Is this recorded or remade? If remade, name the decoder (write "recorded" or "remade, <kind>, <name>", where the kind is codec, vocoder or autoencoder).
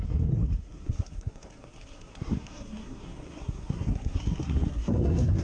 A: remade, codec, SNAC